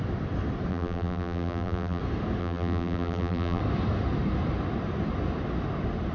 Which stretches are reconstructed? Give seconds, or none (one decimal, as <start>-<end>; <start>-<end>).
0.7-2.0; 2.4-3.6